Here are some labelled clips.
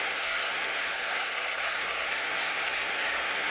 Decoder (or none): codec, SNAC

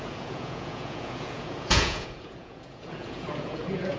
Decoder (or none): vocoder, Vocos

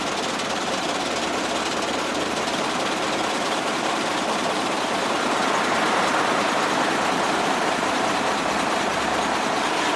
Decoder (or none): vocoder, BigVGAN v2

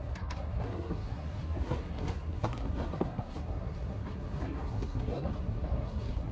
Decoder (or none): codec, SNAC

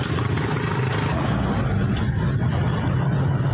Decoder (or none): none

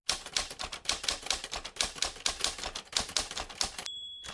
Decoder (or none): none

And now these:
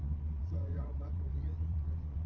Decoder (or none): vocoder, Vocos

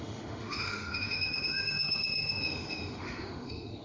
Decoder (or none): autoencoder, DAC-VAE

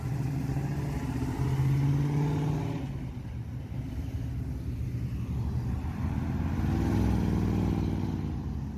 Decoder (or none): none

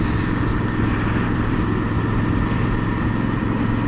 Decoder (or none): none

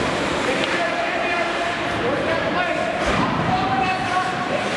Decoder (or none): vocoder, BigVGAN v2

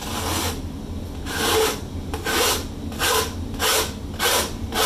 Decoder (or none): none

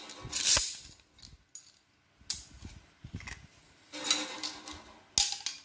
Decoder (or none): none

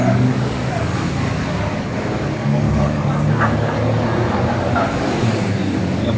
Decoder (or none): codec, DAC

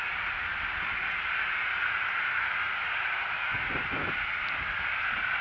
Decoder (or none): none